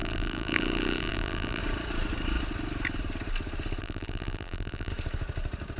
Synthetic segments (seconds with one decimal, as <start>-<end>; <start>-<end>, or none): 0.0-1.6; 3.8-4.9